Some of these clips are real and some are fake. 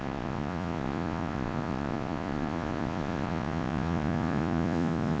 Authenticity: fake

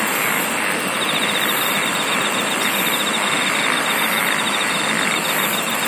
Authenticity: real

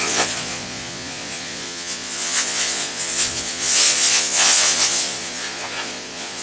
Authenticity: fake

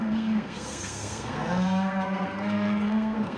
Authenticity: fake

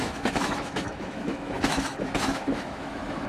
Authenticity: fake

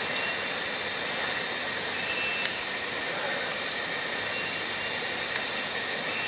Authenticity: real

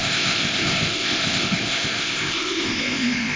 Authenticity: fake